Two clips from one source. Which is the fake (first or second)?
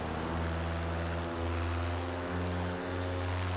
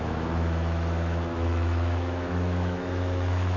second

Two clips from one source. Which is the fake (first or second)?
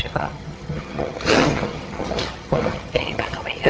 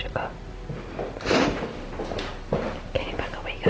first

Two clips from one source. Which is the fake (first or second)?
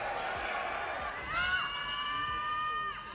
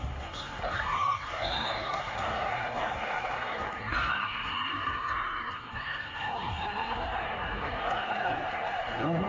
second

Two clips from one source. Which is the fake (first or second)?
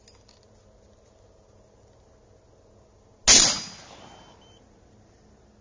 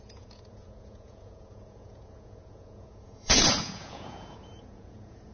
second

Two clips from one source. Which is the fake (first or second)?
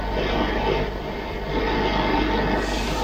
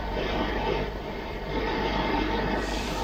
second